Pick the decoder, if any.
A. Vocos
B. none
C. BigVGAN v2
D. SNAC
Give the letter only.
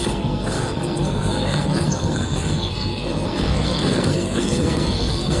D